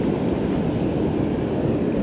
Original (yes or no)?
yes